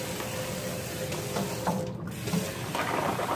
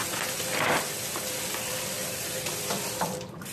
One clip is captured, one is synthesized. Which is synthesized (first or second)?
second